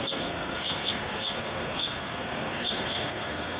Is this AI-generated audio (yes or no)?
yes